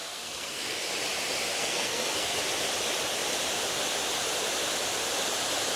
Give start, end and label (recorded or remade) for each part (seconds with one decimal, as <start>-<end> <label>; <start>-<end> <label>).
0.0-1.0 remade; 1.0-1.5 recorded; 1.5-2.4 remade; 2.4-5.8 recorded